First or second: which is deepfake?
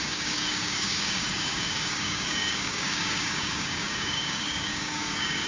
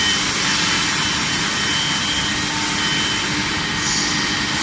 first